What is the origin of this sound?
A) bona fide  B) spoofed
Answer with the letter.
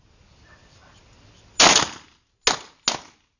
A